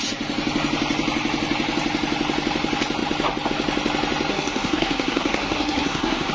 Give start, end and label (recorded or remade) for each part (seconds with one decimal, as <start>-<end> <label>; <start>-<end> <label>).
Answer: 0.0-4.3 recorded; 4.3-6.3 remade